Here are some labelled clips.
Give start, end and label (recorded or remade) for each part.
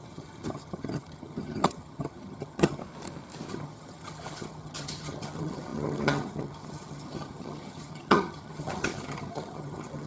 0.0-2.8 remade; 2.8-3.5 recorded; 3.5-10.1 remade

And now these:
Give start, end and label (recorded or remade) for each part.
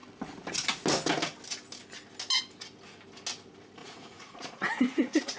0.0-3.8 recorded; 3.8-5.4 remade